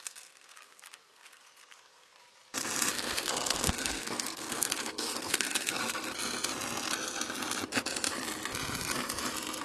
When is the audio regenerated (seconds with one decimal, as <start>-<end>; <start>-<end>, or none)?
0.0-2.2; 2.9-5.8